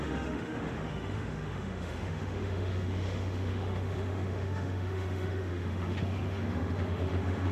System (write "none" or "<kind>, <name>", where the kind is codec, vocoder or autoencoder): autoencoder, DAC-VAE